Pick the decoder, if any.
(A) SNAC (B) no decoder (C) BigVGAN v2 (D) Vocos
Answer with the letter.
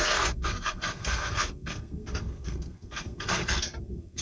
A